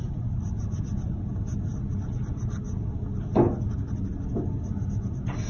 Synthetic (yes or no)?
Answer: no